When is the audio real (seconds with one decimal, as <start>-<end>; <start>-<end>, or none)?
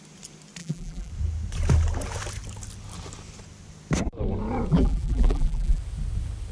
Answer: 0.0-0.6; 1.1-4.7; 5.8-6.5